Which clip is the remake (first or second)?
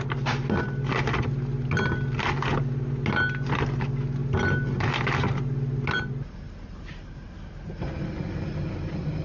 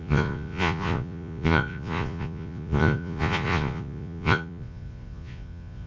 second